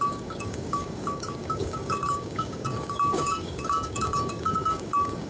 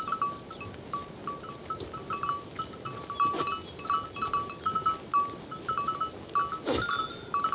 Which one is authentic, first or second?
second